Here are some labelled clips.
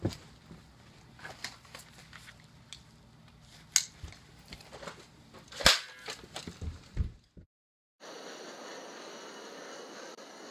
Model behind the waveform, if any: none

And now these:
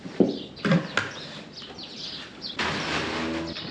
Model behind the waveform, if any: none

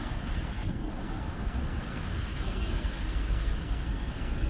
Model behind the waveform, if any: codec, SNAC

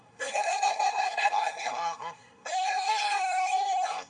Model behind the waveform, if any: codec, SNAC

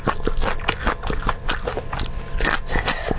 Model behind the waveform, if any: none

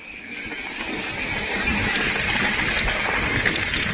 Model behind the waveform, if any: none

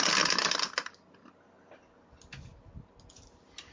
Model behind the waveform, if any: none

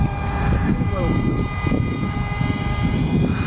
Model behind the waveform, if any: vocoder, BigVGAN v2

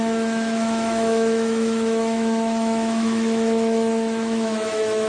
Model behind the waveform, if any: autoencoder, DAC-VAE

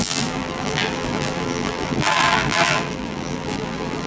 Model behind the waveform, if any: vocoder, BigVGAN v2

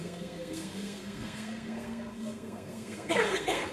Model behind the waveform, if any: codec, SNAC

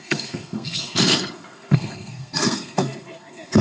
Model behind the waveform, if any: codec, SNAC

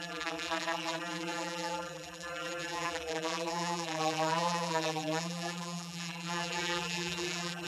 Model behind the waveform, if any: vocoder, BigVGAN v2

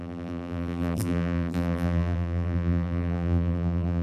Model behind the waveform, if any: vocoder, BigVGAN v2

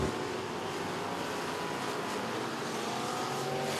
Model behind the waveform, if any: none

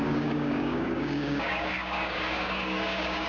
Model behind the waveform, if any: codec, DAC